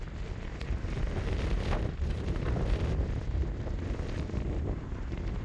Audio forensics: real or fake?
real